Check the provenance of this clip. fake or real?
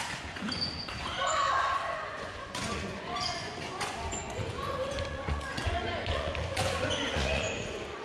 fake